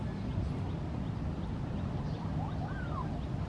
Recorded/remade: recorded